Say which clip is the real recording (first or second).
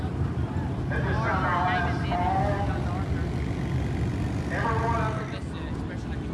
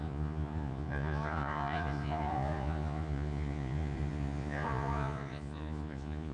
first